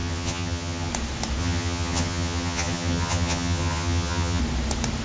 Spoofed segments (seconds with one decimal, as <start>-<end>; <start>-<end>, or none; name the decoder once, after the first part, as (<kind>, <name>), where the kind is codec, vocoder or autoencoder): 0.0-0.9 (vocoder, HiFi-GAN); 1.4-4.4